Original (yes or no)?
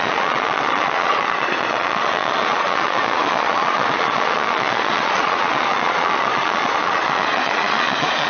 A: no